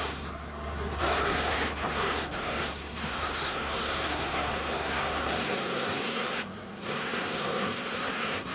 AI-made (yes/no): yes